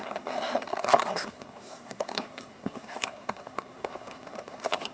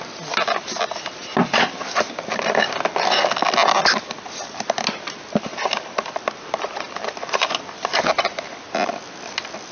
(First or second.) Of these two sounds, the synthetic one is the first